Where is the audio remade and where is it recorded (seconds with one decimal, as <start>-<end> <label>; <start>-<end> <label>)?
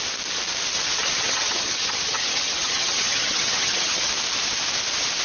0.0-1.0 recorded; 1.0-4.1 remade; 4.1-5.2 recorded